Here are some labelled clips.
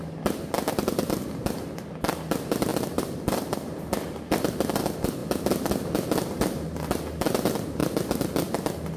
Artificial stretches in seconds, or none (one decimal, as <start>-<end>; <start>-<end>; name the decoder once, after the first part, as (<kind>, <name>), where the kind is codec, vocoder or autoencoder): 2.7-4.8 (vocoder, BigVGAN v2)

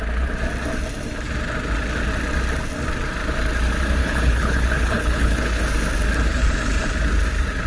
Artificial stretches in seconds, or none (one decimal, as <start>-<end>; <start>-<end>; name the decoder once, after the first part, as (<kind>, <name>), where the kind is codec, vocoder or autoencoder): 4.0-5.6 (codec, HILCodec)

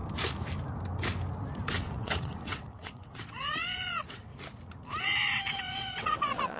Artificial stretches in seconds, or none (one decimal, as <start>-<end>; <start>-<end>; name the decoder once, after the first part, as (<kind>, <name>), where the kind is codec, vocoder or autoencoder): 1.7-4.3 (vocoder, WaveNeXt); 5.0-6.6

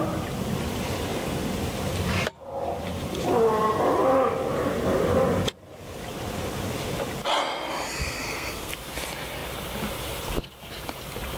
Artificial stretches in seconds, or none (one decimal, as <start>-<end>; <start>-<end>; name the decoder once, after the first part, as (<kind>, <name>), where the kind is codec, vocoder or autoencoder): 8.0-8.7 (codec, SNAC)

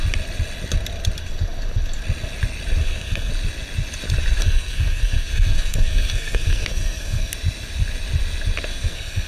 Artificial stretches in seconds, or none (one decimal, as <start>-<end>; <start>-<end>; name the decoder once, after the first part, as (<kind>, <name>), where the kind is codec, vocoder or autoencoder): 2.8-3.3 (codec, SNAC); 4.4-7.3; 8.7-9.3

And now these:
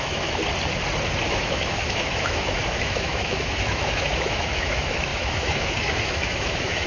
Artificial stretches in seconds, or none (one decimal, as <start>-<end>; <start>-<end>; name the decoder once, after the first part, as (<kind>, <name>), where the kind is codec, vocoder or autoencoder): 0.0-0.4 (autoencoder, DAC-VAE); 1.3-6.9